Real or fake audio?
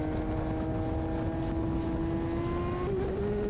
real